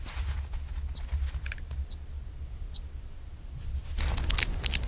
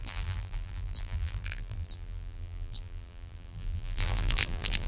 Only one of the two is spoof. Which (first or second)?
second